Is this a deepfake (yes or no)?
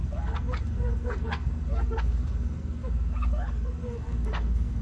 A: yes